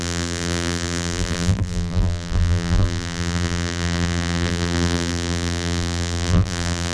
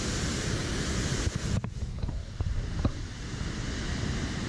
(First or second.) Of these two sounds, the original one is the second